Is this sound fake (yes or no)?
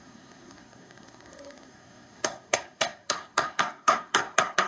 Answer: yes